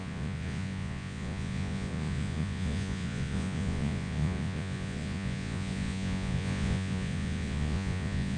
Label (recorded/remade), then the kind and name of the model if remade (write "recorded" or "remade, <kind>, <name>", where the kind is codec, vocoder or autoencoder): remade, vocoder, Vocos